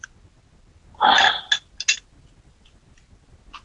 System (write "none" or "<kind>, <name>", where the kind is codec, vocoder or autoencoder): none